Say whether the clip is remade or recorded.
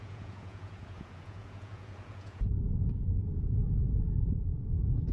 remade